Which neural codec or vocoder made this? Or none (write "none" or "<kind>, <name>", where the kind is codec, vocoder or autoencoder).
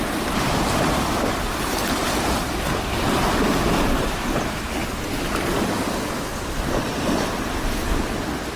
none